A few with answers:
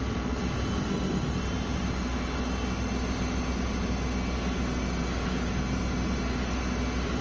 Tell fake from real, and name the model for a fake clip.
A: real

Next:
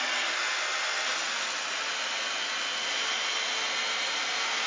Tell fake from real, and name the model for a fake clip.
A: real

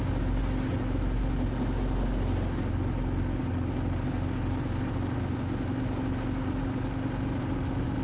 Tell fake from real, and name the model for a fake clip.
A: real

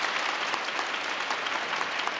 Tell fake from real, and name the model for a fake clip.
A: real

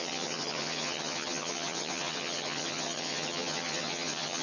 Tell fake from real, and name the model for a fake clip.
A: fake, vocoder, HiFi-GAN